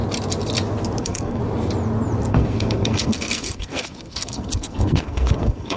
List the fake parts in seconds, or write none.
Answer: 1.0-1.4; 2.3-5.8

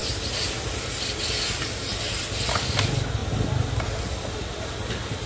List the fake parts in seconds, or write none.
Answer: none